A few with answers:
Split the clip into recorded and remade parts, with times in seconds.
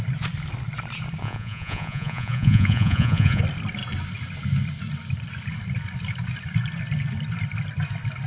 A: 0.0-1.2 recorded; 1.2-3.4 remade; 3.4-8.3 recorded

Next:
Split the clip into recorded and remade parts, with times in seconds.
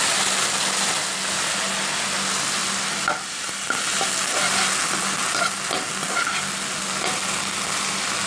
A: 0.0-8.3 recorded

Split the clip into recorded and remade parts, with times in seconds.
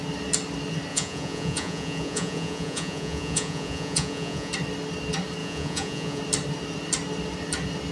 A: 0.0-0.9 recorded; 0.9-4.5 remade; 4.5-5.4 recorded; 5.4-6.2 remade; 6.2-7.9 recorded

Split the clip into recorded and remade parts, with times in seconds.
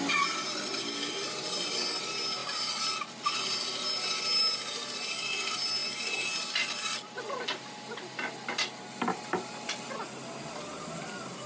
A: 0.0-11.5 recorded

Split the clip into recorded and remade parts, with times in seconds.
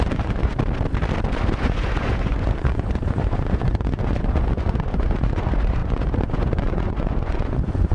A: 0.0-0.5 remade; 0.5-1.6 recorded; 1.6-7.9 remade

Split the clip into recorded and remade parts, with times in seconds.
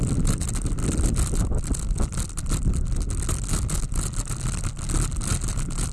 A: 0.0-5.9 recorded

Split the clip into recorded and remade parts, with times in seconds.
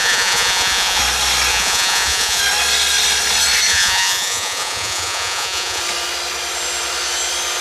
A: 0.0-1.0 remade; 1.0-1.5 recorded; 1.5-2.4 remade; 2.4-3.7 recorded; 3.7-5.8 remade; 5.8-7.6 recorded